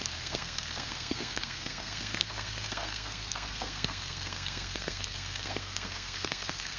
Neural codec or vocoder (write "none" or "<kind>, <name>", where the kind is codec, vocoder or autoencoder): codec, SNAC